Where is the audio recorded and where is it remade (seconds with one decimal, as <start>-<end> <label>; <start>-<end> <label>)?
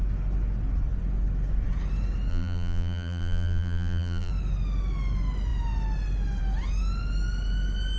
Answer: 0.0-2.3 recorded; 2.3-4.3 remade; 4.3-8.0 recorded